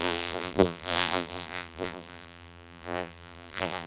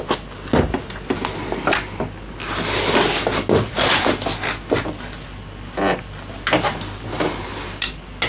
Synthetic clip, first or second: first